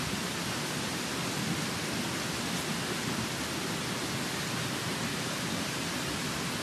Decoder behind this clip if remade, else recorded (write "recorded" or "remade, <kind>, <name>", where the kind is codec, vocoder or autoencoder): recorded